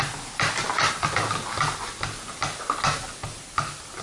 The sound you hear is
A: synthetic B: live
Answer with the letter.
B